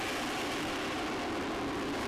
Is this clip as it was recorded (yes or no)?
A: yes